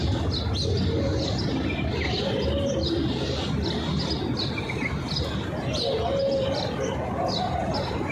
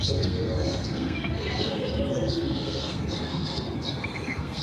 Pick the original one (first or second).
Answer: first